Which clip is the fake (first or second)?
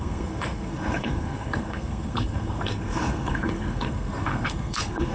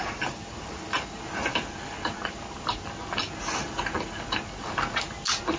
first